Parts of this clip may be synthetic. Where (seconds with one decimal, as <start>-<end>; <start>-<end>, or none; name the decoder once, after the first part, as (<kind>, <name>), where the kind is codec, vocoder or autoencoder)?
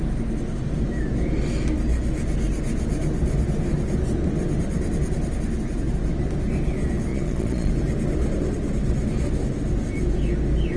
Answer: 7.1-7.7 (vocoder, Vocos)